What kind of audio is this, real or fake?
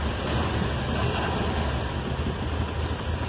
real